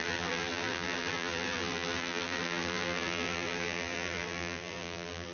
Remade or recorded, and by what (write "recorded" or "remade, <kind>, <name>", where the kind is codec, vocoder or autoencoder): remade, vocoder, BigVGAN v2